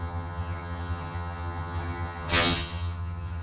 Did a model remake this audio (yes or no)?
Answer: yes